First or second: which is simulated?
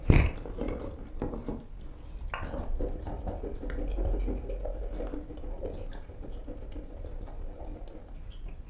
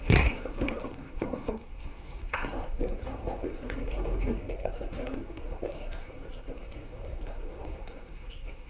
second